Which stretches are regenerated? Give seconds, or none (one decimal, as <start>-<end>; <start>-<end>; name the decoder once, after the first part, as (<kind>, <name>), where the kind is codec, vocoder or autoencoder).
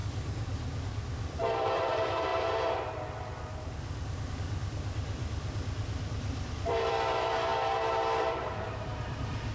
0.0-2.3 (vocoder, BigVGAN v2); 4.3-7.5; 8.2-9.5